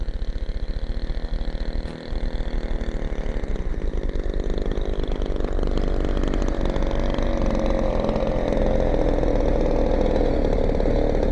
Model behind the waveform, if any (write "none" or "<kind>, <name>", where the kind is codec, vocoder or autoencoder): none